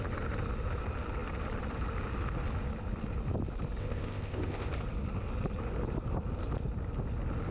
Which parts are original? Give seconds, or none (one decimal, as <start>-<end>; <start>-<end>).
0.0-3.8; 4.7-7.5